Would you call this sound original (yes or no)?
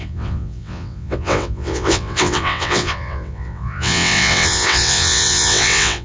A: no